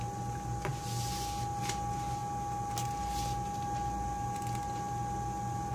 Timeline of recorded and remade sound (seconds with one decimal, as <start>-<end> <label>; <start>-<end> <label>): 0.0-5.7 recorded